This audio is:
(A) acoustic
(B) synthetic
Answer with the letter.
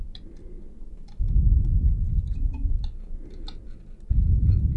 A